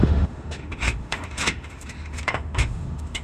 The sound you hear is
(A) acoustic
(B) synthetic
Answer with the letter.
B